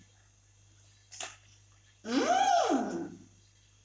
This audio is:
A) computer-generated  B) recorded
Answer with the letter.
B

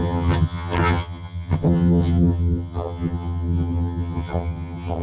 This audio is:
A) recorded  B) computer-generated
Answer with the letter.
B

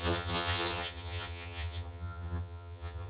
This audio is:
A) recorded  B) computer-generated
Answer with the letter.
B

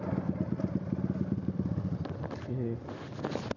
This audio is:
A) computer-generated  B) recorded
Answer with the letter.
B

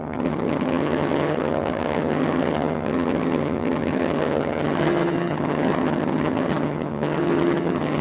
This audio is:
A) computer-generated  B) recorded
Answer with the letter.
A